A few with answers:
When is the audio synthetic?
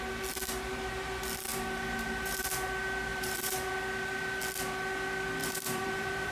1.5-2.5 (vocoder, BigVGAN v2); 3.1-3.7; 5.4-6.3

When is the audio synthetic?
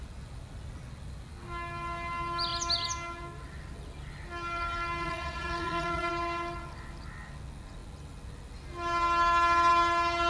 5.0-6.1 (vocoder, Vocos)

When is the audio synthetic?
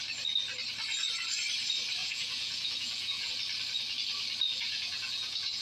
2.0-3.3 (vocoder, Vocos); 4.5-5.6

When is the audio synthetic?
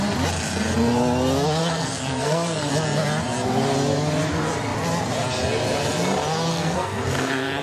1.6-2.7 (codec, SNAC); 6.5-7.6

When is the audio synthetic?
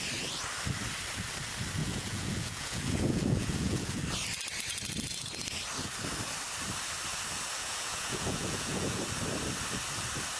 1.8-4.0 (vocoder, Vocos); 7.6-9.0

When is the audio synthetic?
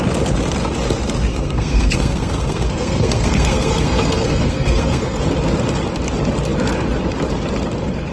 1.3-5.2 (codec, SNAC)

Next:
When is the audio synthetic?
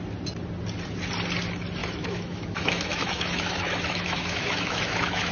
1.8-5.3 (autoencoder, DAC-VAE)